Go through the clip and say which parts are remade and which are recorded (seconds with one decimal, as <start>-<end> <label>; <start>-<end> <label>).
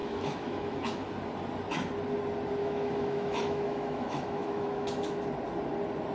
0.0-1.1 remade; 1.1-2.6 recorded; 2.6-5.2 remade; 5.2-6.1 recorded